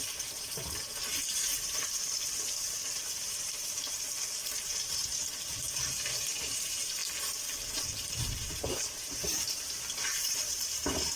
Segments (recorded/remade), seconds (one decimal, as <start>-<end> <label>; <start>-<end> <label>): 0.0-7.0 remade; 7.0-7.7 recorded; 7.7-11.2 remade